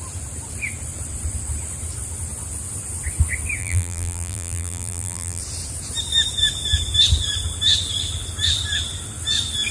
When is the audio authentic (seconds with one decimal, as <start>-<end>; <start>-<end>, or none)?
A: 0.0-3.6; 5.4-9.7

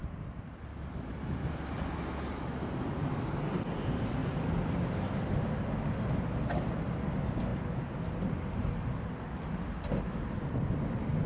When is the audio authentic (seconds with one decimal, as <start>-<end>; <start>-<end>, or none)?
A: 0.0-11.3

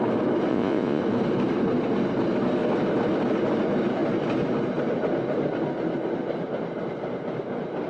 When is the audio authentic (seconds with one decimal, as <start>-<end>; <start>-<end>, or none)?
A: 0.0-0.5; 1.0-7.9

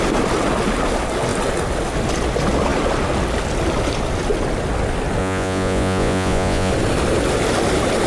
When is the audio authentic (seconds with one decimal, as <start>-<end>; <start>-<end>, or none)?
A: 0.0-5.2; 6.7-8.1

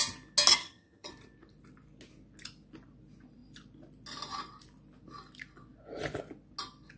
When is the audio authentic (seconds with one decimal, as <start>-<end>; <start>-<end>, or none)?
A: 0.0-0.6; 1.1-7.0

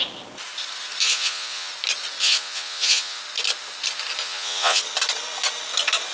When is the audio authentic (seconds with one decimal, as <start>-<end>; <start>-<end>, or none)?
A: 0.0-1.0; 1.7-2.2; 3.2-4.2; 4.8-6.1